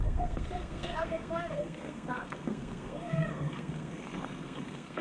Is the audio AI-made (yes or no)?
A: yes